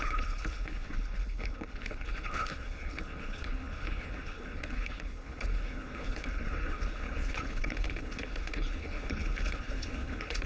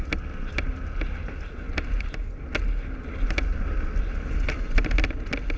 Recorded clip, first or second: second